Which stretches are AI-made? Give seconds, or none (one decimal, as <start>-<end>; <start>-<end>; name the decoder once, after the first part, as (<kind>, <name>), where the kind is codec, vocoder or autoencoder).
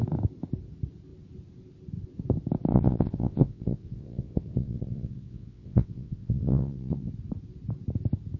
2.7-7.1 (vocoder, WaveNeXt)